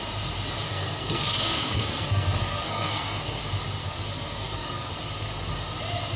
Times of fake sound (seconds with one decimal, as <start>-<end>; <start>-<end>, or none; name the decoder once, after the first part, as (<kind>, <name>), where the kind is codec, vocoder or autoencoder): 0.7-3.4 (codec, SNAC); 3.8-4.9